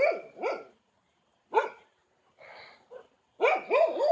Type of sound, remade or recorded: recorded